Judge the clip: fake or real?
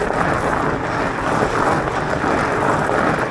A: real